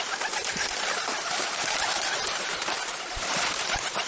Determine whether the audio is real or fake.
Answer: real